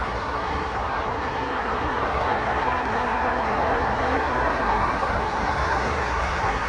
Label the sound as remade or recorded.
remade